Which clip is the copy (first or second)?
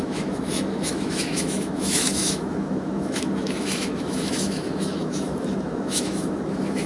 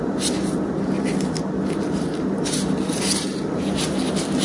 first